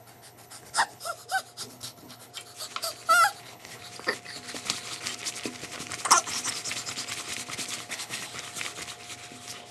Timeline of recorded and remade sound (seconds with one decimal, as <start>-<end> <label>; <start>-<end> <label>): 0.0-1.0 remade; 1.0-1.6 recorded; 1.6-2.3 remade; 2.3-3.4 recorded; 3.4-3.8 remade; 3.8-7.9 recorded; 7.9-8.3 remade; 8.3-9.7 recorded